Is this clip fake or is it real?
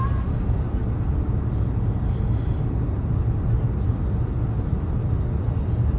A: real